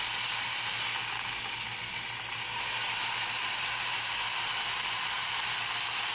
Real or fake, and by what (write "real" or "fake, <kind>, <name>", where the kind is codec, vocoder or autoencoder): real